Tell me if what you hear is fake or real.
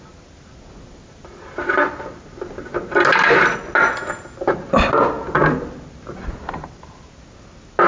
real